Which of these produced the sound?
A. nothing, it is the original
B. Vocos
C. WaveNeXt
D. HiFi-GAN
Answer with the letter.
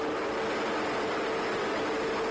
A